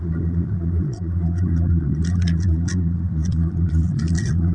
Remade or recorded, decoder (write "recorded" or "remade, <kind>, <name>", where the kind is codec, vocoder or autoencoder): remade, vocoder, Vocos